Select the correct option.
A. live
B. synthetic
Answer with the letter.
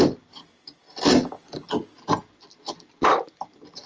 A